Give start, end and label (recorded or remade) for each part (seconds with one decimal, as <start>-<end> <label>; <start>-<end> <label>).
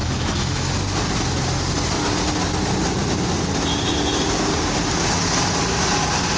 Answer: 0.0-0.7 remade; 0.7-6.4 recorded